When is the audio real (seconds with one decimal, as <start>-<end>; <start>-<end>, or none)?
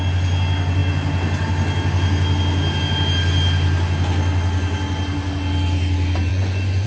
0.0-6.3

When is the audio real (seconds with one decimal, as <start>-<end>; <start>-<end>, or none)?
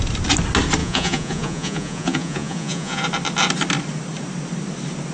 0.0-0.8; 3.0-5.1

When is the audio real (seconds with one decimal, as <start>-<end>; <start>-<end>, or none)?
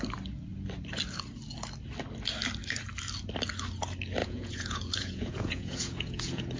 0.0-4.2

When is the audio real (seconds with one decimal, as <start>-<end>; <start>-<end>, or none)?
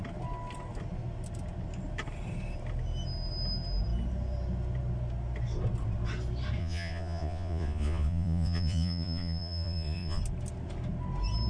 0.0-6.6; 10.2-11.5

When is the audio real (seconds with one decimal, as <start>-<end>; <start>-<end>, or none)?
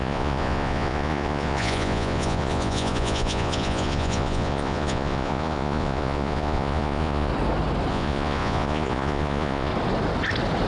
7.3-7.9; 9.7-10.7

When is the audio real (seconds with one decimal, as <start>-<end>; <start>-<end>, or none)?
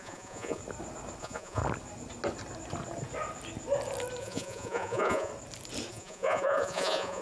0.6-1.2; 1.6-4.2; 5.3-5.9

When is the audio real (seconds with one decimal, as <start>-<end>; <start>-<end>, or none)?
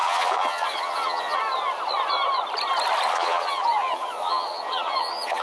1.4-3.1